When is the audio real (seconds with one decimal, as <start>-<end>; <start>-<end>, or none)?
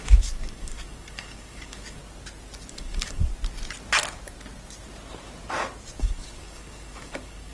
2.0-2.7; 3.3-6.0